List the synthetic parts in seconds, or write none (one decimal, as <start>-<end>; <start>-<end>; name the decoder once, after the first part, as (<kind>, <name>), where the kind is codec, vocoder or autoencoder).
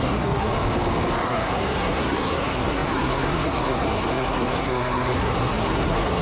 0.0-0.5 (codec, SNAC); 1.2-6.2